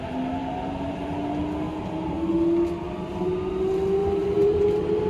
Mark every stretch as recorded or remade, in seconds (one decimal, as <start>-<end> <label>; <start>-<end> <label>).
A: 0.0-4.0 recorded; 4.0-4.6 remade; 4.6-5.1 recorded